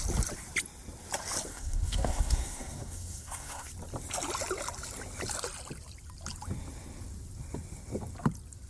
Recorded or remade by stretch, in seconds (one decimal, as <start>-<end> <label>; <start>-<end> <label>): 0.0-1.5 recorded; 1.5-3.7 remade; 3.7-8.7 recorded